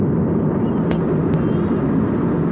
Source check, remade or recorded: recorded